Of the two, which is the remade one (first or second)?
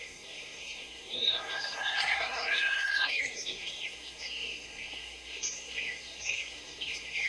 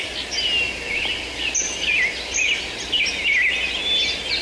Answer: first